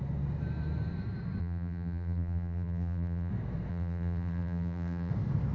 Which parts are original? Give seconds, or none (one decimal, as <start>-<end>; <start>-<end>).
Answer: 0.0-1.4; 3.3-3.7; 5.1-5.5